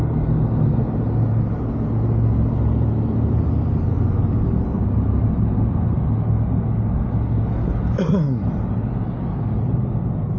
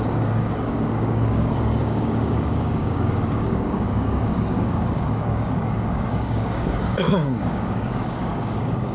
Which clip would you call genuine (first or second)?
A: first